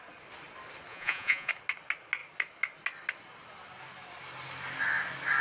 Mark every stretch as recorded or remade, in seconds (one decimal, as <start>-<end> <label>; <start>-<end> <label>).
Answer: 0.0-0.9 recorded; 0.9-1.5 remade; 1.5-5.4 recorded